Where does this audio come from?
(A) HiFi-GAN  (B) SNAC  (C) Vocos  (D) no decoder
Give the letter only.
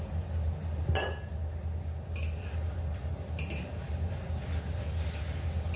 D